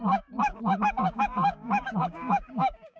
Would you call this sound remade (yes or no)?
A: yes